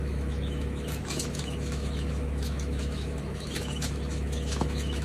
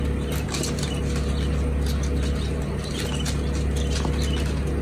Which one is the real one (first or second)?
second